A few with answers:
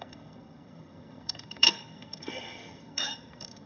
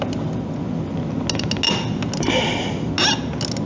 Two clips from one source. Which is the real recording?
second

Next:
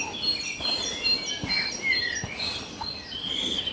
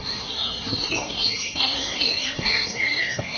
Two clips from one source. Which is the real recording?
first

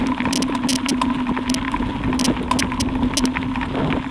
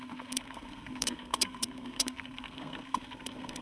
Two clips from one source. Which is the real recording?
first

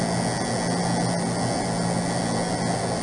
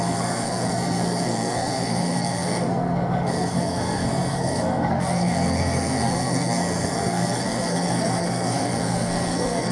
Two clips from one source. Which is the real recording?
first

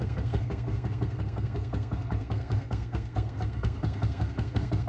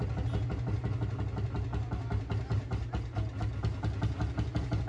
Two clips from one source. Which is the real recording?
second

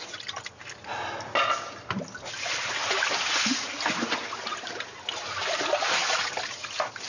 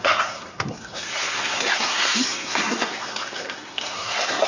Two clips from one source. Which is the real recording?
first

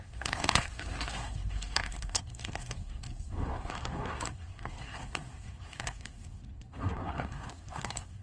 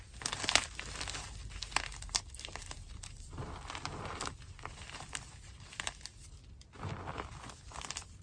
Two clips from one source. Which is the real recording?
second